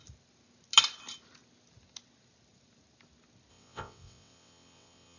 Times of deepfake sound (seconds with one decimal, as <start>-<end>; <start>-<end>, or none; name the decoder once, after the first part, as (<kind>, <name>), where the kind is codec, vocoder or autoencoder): 3.5-5.2 (vocoder, WaveNeXt)